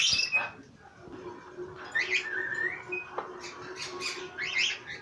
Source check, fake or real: real